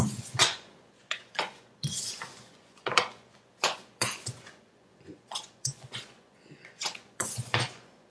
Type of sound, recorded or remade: remade